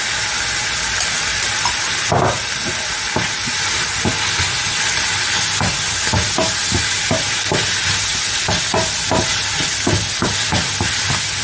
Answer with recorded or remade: recorded